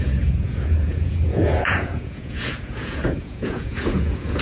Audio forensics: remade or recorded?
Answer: remade